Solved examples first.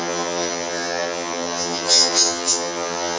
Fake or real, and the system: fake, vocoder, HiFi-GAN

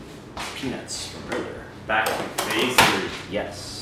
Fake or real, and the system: real